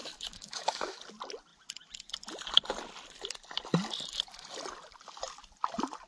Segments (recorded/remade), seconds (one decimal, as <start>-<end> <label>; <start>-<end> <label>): 0.0-1.0 remade; 1.0-6.1 recorded